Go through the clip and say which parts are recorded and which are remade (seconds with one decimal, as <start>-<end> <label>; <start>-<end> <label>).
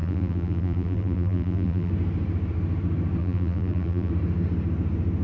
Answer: 0.0-1.9 remade; 1.9-3.2 recorded; 3.2-4.1 remade; 4.1-5.2 recorded